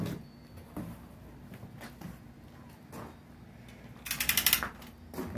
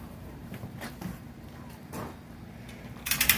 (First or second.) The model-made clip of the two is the second